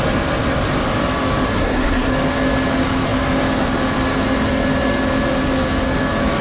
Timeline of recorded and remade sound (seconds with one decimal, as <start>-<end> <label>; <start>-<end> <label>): 0.0-1.5 recorded; 1.5-2.1 remade; 2.1-6.4 recorded